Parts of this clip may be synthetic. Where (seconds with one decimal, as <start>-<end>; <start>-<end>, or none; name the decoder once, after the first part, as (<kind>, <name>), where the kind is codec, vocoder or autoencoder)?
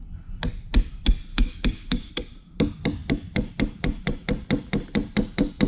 1.3-2.1 (codec, DAC)